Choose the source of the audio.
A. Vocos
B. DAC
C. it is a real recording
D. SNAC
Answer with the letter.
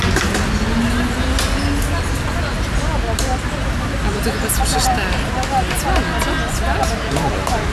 C